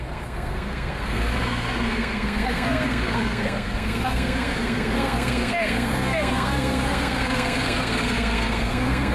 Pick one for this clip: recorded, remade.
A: remade